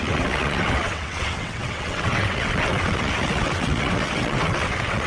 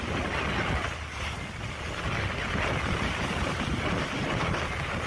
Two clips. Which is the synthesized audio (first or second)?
first